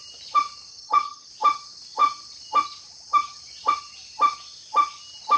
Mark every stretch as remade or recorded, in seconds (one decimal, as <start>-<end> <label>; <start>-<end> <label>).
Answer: 0.0-0.7 recorded; 0.7-1.3 remade; 1.3-5.4 recorded